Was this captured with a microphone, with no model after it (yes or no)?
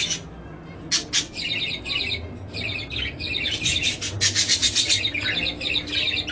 yes